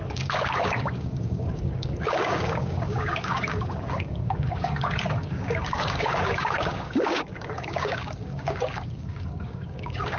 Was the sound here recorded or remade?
remade